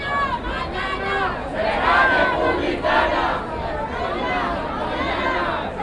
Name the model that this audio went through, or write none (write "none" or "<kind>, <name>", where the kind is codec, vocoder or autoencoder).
none